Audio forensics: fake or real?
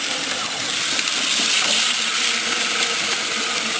real